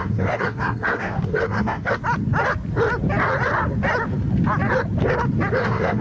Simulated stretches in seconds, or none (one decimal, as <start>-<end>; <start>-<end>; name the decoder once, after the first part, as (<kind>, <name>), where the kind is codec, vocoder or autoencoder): 0.0-2.0 (codec, SNAC); 5.6-6.0